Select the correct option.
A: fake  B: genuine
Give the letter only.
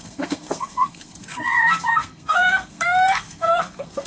A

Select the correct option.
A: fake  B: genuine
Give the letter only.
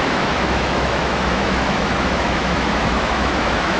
A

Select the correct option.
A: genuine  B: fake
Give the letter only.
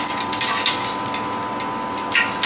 A